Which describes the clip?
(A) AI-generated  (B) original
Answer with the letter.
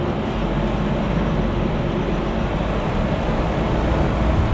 B